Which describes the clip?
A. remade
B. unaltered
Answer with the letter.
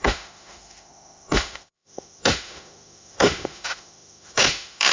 A